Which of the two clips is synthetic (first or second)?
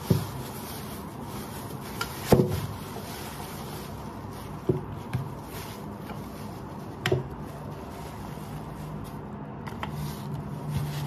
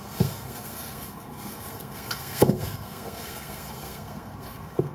second